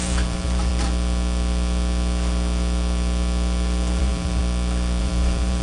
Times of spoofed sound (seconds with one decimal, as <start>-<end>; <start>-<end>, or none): 0.0-0.7; 4.0-4.4; 5.0-5.6